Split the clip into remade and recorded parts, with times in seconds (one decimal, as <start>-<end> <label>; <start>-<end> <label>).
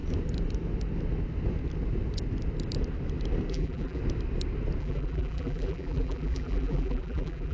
0.0-3.5 recorded; 3.5-4.0 remade; 4.0-4.8 recorded; 4.8-7.5 remade